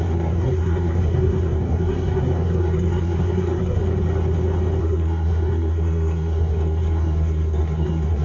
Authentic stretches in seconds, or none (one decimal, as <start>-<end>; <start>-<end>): 3.8-4.8